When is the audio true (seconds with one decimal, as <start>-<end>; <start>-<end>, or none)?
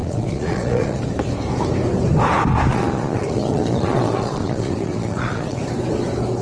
1.0-2.7; 5.6-6.4